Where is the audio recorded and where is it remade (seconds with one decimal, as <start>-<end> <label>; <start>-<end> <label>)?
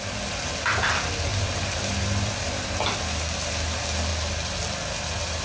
0.0-1.3 recorded; 1.3-3.0 remade; 3.0-5.4 recorded